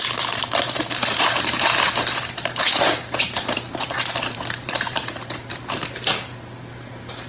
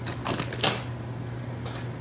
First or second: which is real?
second